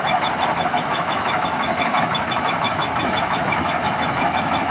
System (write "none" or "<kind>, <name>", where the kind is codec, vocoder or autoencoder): autoencoder, DAC-VAE